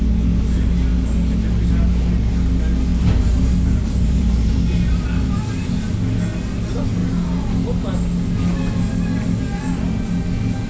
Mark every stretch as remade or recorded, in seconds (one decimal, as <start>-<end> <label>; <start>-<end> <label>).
0.0-2.9 recorded; 2.9-5.9 remade; 5.9-10.7 recorded